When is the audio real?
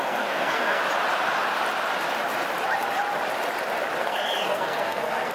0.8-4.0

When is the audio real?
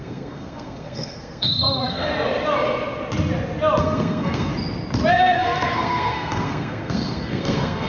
2.1-3.8; 4.5-5.1